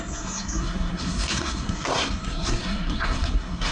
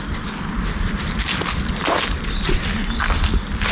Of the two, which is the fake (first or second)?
first